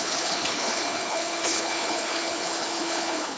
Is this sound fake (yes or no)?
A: yes